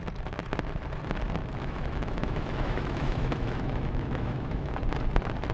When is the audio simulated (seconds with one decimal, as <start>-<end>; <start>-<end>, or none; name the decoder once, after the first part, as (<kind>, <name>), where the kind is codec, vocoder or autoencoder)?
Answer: 1.4-4.7 (autoencoder, DAC-VAE)